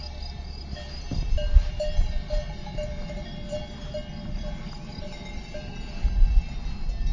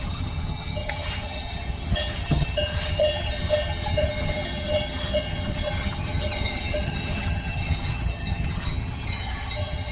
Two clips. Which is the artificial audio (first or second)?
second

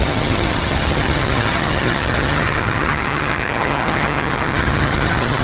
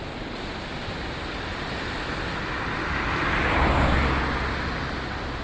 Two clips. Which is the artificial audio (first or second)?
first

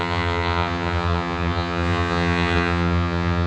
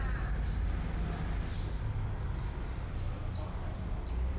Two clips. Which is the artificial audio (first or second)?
first